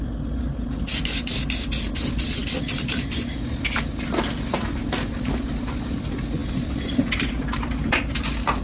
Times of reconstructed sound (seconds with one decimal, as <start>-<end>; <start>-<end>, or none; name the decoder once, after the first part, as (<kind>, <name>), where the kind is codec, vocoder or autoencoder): none